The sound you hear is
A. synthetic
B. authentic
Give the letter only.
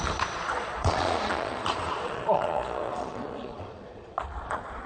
A